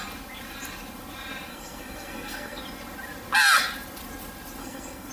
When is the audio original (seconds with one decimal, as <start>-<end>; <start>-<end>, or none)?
0.0-1.5; 2.6-4.6